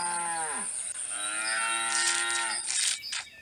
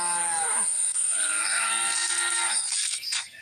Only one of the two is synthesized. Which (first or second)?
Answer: second